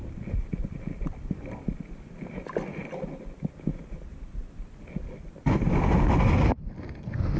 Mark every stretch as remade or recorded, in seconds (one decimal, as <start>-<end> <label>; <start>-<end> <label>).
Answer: 0.0-7.4 recorded